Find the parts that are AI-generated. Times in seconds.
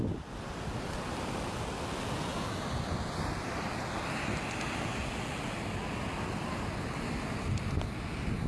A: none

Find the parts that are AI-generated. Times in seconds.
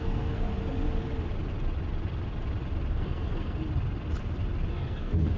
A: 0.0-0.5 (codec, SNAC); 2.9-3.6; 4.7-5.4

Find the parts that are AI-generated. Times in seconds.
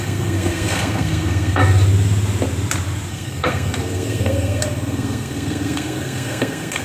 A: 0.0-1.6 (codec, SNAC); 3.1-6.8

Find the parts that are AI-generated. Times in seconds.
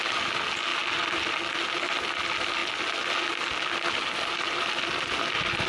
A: none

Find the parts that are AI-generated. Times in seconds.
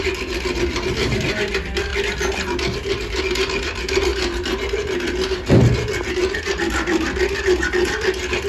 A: none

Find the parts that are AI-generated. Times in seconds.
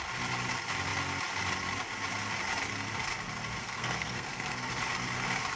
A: 3.6-4.7 (codec, SNAC)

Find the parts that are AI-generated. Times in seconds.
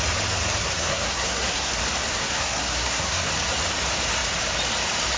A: 0.6-1.7 (codec, SNAC); 2.1-3.3